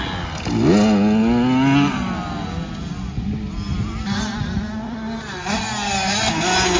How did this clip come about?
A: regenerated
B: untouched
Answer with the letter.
B